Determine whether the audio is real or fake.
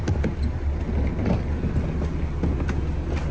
real